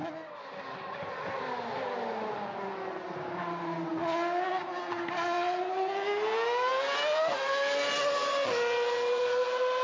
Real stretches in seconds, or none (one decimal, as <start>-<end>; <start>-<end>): 0.0-9.8